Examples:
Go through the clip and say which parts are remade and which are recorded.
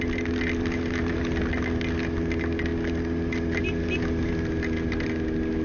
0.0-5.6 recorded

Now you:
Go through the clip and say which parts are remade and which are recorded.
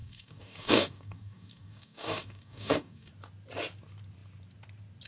0.0-3.1 remade; 3.1-5.1 recorded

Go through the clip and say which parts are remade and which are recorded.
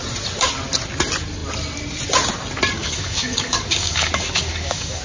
0.0-2.7 recorded; 2.7-5.0 remade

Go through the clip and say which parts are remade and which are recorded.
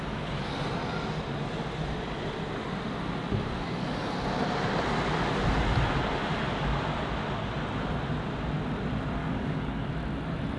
0.0-9.2 recorded; 9.2-9.9 remade; 9.9-10.6 recorded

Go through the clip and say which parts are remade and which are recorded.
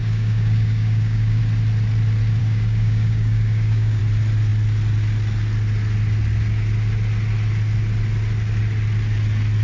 0.0-1.4 remade; 1.4-2.4 recorded; 2.4-4.0 remade; 4.0-9.6 recorded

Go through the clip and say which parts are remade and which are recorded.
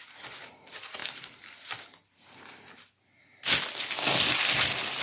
0.0-5.0 recorded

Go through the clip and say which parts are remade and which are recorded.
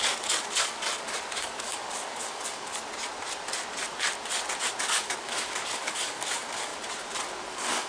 0.0-2.7 remade; 2.7-4.8 recorded; 4.8-6.7 remade; 6.7-7.5 recorded; 7.5-7.9 remade